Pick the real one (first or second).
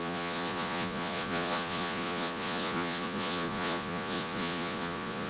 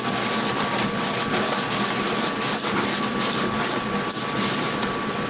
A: second